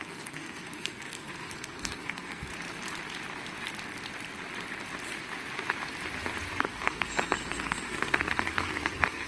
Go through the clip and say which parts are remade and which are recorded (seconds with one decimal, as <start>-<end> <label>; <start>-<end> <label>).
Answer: 0.0-2.5 remade; 2.5-6.6 recorded; 6.6-9.3 remade